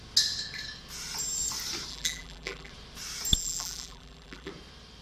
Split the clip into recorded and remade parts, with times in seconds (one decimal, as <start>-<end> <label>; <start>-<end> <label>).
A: 0.0-1.9 recorded; 1.9-2.7 remade; 2.7-3.4 recorded; 3.4-4.5 remade; 4.5-5.0 recorded